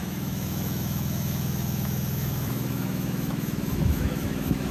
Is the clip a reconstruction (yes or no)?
yes